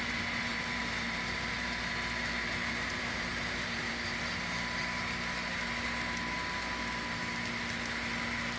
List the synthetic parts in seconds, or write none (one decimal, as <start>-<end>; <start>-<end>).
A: 0.5-1.9; 2.4-4.2